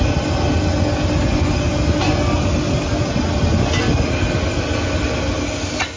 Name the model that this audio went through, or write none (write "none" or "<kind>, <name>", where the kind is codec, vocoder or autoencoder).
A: none